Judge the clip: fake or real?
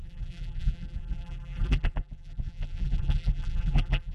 fake